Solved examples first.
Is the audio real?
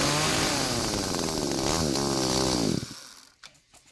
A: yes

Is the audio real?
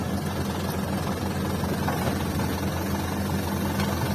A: yes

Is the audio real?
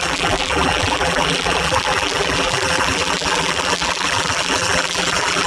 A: no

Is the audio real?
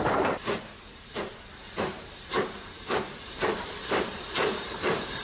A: no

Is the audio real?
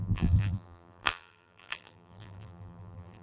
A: no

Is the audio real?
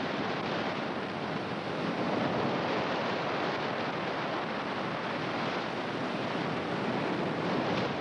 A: no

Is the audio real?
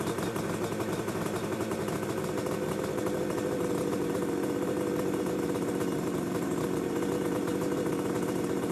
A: no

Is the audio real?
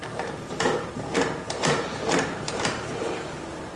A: no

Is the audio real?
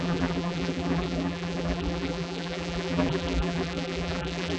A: no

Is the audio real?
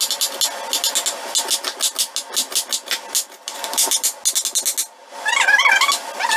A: yes